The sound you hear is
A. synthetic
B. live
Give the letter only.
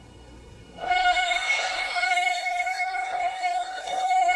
A